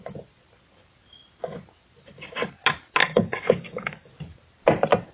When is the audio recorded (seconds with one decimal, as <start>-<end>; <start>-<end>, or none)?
0.0-3.0; 4.1-5.1